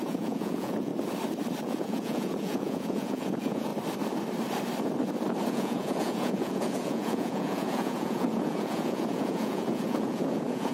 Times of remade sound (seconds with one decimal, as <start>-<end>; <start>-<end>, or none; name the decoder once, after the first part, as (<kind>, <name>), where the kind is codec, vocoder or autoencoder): 0.0-0.9 (vocoder, Vocos); 1.6-3.7; 5.5-10.7